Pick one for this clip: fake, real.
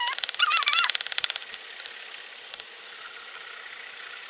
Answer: fake